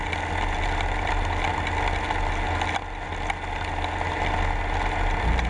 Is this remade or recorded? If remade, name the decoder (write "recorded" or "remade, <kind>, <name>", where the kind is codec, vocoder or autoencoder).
recorded